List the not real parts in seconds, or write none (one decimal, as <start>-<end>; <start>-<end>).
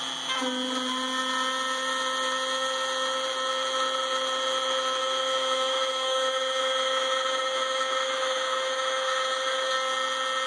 5.0-9.7